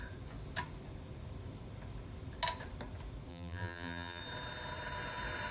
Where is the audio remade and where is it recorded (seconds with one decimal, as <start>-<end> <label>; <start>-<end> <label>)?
0.0-3.3 recorded; 3.3-4.2 remade; 4.2-5.5 recorded